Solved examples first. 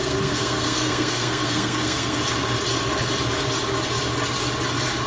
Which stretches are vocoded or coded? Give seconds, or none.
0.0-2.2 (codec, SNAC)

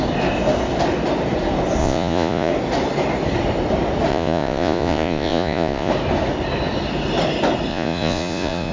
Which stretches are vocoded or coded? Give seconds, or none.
1.8-2.5 (vocoder, Vocos); 4.1-5.9; 7.7-8.7

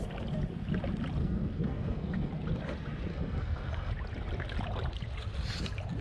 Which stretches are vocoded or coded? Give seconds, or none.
1.2-2.3 (codec, SNAC); 3.1-3.9

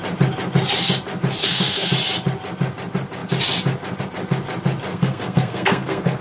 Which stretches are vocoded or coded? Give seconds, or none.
1.4-1.9 (codec, SNAC); 4.9-6.2

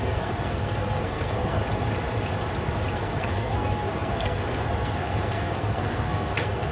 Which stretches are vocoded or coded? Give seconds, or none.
0.0-1.6 (codec, SNAC); 2.9-6.7

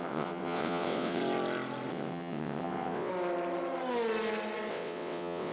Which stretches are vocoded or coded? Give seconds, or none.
0.0-1.2 (vocoder, WaveNeXt); 1.9-3.1; 4.7-5.5

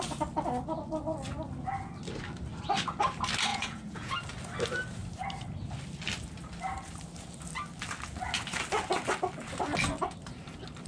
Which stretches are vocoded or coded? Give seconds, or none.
3.5-4.1 (vocoder, Vocos)

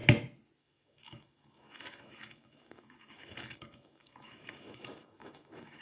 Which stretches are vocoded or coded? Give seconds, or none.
0.6-5.8 (autoencoder, DAC-VAE)